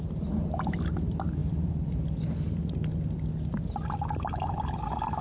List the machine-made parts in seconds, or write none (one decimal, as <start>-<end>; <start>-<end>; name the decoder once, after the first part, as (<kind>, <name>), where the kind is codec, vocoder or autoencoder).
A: none